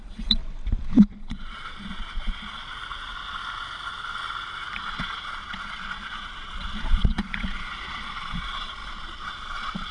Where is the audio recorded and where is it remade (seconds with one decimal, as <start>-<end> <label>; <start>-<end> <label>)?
0.0-0.4 remade; 0.4-1.2 recorded; 1.2-2.6 remade; 2.6-4.8 recorded; 4.8-9.9 remade